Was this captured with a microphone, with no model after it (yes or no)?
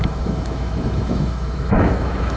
no